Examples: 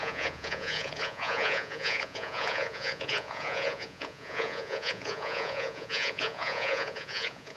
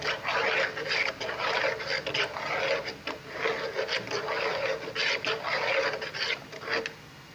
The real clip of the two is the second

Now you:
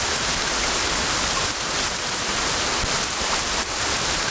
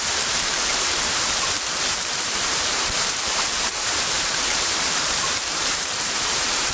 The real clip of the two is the first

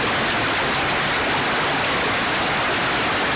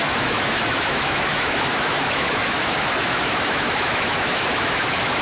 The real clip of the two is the first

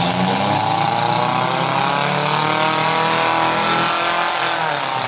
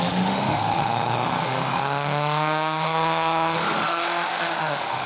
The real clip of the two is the first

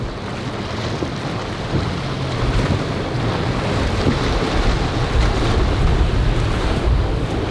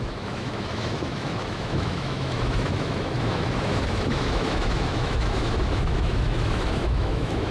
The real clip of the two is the first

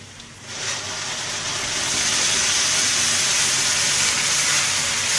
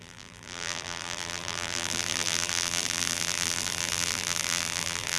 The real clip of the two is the first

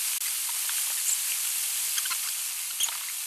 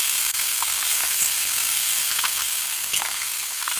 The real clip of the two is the first